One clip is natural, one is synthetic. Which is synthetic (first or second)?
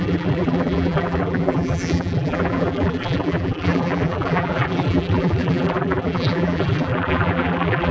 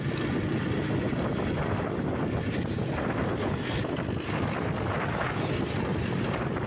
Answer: first